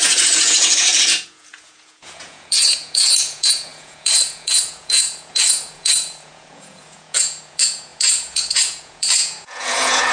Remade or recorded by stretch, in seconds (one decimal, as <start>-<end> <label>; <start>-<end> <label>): 0.0-10.1 remade